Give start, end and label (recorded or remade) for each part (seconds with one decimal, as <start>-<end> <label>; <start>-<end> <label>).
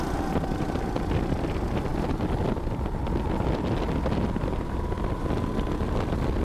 0.0-6.4 recorded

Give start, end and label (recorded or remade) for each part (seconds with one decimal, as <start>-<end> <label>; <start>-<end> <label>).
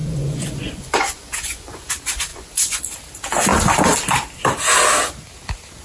0.0-1.9 remade; 1.9-2.3 recorded; 2.3-2.8 remade; 2.8-5.8 recorded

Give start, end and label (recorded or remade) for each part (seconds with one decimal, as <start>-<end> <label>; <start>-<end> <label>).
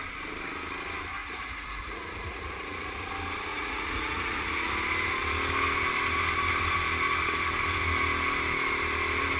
0.0-1.2 recorded; 1.2-3.1 remade; 3.1-3.5 recorded; 3.5-4.7 remade; 4.7-9.4 recorded